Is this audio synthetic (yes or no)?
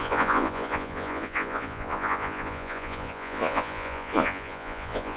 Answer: yes